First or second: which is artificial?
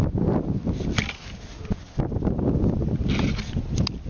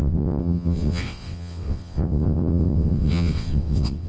second